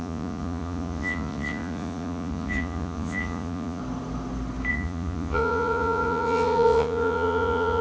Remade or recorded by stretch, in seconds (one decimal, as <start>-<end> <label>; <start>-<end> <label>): 0.0-3.8 remade; 3.8-4.7 recorded; 4.7-7.8 remade

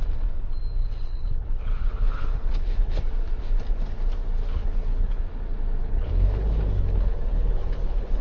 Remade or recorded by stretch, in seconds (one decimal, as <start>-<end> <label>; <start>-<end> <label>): 0.0-0.8 recorded; 0.8-3.0 remade; 3.0-4.4 recorded; 4.4-5.2 remade; 5.2-5.8 recorded; 5.8-8.2 remade

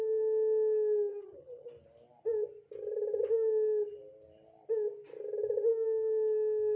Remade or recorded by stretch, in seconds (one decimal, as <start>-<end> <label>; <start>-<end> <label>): 0.0-1.1 recorded; 1.1-1.7 remade; 1.7-6.8 recorded

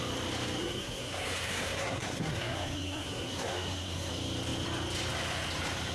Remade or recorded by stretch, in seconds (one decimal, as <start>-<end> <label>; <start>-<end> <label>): 0.0-0.6 recorded; 0.6-4.1 remade; 4.1-5.9 recorded

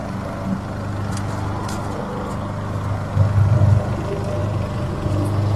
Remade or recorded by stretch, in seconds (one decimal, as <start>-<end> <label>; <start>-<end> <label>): 0.0-4.4 recorded; 4.4-5.6 remade

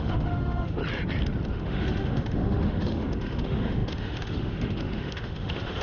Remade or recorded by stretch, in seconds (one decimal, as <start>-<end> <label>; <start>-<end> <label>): 0.0-0.8 remade; 0.8-1.5 recorded; 1.5-5.8 remade

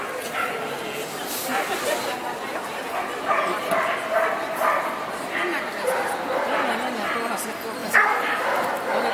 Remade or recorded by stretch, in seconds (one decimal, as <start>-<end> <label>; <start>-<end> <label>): 0.0-7.8 recorded; 7.8-8.7 remade; 8.7-9.1 recorded

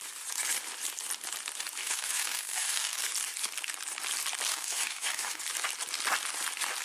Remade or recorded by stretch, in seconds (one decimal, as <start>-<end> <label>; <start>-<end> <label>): 0.0-1.8 recorded; 1.8-3.0 remade; 3.0-4.5 recorded; 4.5-5.4 remade; 5.4-6.8 recorded